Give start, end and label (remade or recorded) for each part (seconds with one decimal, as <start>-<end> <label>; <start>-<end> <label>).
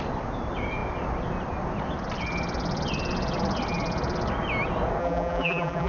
0.0-5.0 recorded; 5.0-5.9 remade